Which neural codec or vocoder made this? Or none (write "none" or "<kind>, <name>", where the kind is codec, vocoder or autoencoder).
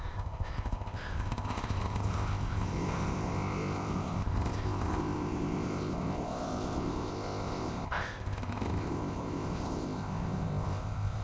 codec, ZipCodec